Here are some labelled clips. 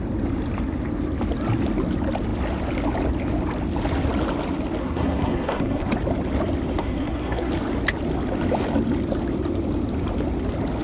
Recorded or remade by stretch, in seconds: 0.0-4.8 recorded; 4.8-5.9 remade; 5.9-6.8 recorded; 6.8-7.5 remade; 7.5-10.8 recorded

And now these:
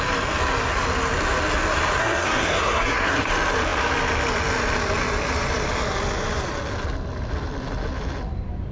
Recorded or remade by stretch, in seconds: 0.0-2.0 recorded; 2.0-3.3 remade; 3.3-8.7 recorded

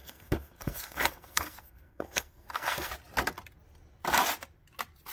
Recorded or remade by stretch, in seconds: 0.0-2.9 remade; 2.9-5.1 recorded

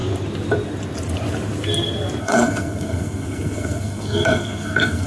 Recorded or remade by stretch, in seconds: 0.0-2.2 recorded; 2.2-5.1 remade

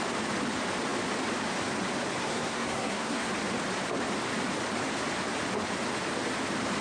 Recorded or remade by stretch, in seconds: 0.0-2.2 recorded; 2.2-3.3 remade; 3.3-6.8 recorded

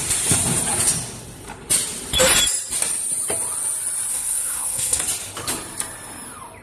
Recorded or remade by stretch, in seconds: 0.0-4.1 recorded; 4.1-5.0 remade; 5.0-6.6 recorded

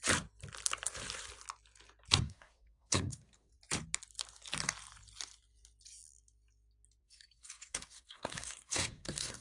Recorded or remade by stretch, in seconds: 0.0-2.2 recorded; 2.2-3.5 remade; 3.5-7.0 recorded; 7.0-9.4 remade

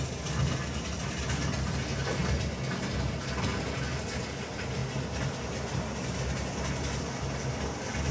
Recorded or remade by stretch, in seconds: 0.0-8.1 recorded